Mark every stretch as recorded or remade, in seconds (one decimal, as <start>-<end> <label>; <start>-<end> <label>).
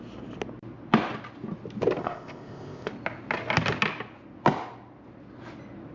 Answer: 0.0-2.0 recorded; 2.0-2.9 remade; 2.9-5.9 recorded